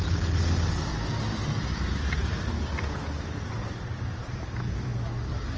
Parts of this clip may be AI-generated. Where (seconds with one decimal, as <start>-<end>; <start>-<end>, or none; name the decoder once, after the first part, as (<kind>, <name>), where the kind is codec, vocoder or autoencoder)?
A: 0.9-2.4 (vocoder, BigVGAN v2); 3.6-4.9